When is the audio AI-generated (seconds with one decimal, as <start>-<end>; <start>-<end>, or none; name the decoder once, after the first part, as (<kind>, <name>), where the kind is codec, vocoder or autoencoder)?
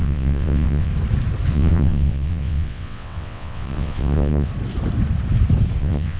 0.0-0.9 (vocoder, WaveNeXt); 1.5-4.5; 5.8-6.2